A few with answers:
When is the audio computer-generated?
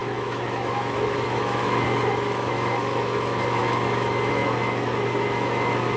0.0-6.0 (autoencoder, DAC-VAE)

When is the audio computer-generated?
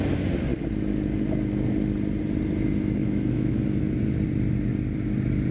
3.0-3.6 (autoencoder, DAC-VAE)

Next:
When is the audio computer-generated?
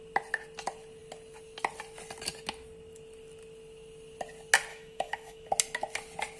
4.7-5.5 (autoencoder, DAC-VAE)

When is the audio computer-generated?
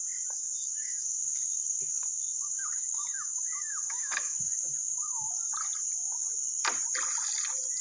0.6-5.3 (autoencoder, DAC-VAE)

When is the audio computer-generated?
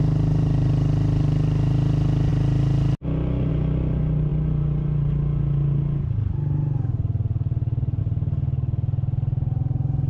none